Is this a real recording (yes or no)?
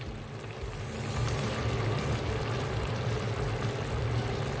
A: yes